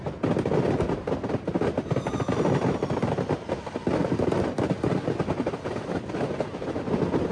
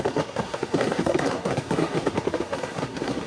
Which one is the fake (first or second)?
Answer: second